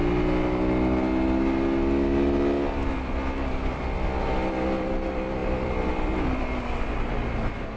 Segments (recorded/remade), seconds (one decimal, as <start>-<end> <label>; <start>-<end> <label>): 0.0-5.4 recorded; 5.4-6.4 remade; 6.4-7.8 recorded